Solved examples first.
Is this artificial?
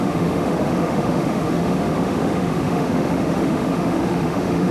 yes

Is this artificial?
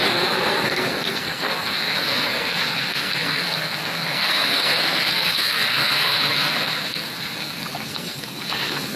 yes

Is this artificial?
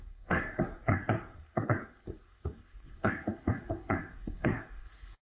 yes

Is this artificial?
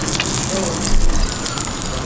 no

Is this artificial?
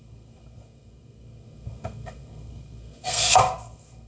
yes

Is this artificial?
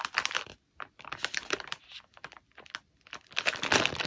no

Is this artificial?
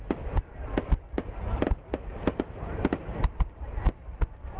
no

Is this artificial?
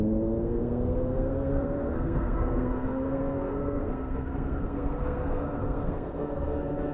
yes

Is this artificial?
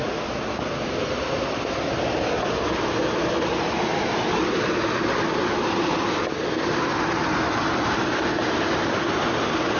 no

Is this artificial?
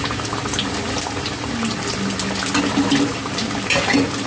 no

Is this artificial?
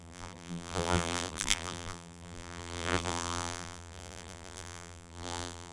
yes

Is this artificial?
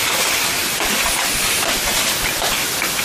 yes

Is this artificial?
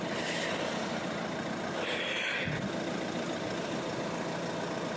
no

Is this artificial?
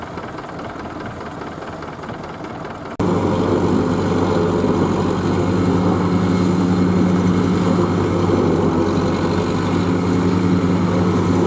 no